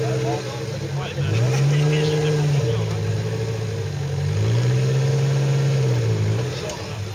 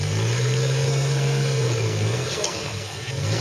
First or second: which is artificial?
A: second